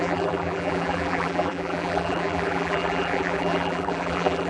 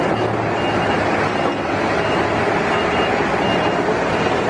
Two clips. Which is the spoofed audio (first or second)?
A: first